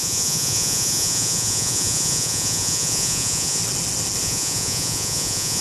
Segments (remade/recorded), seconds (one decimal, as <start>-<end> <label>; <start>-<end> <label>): 0.0-3.6 remade; 3.6-4.2 recorded; 4.2-5.6 remade